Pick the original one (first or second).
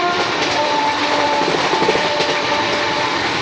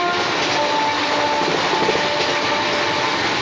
second